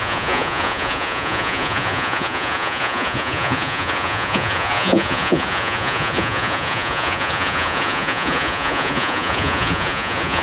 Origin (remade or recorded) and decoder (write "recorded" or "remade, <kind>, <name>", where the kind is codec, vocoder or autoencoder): remade, vocoder, Vocos